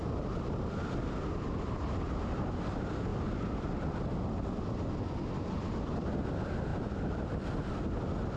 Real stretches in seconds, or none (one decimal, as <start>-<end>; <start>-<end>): 0.0-6.7; 7.3-8.4